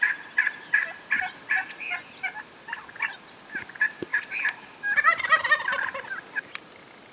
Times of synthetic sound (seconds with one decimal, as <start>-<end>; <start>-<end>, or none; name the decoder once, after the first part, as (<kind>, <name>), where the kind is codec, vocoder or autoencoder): none